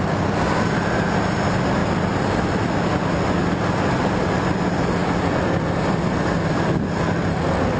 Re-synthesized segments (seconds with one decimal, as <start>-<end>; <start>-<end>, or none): none